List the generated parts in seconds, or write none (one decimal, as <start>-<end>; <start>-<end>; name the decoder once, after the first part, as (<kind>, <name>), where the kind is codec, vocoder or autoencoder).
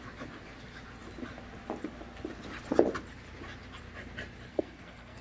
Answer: 4.5-5.2 (codec, SNAC)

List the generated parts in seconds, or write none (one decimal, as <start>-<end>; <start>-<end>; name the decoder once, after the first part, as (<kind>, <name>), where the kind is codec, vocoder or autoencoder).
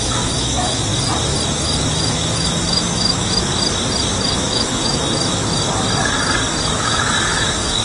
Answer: 0.0-0.9 (autoencoder, DAC-VAE); 1.8-3.5; 4.3-5.5; 6.8-7.8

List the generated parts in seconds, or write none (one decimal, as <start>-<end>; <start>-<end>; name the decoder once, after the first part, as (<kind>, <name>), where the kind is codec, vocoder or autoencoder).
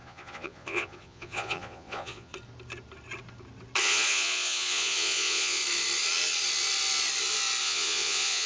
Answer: 0.0-2.3 (vocoder, Vocos); 3.8-5.6; 7.6-8.5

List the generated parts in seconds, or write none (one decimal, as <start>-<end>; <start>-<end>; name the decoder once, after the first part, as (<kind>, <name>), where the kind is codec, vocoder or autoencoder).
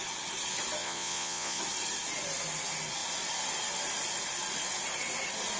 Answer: 0.8-1.6 (vocoder, Vocos)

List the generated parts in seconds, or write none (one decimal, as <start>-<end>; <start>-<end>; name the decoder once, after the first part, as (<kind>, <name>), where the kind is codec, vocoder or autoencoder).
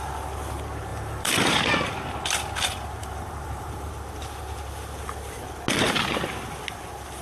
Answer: 0.9-3.9 (vocoder, BigVGAN v2)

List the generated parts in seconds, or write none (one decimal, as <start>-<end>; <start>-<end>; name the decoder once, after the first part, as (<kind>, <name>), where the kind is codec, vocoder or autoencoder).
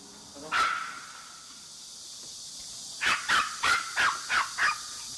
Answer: 2.6-4.0 (vocoder, BigVGAN v2)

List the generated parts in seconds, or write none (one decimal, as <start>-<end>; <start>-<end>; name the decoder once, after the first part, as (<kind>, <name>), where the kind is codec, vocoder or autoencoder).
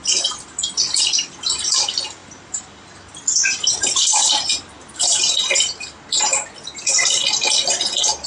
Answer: none